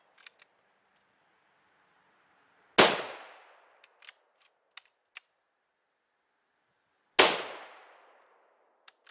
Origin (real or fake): real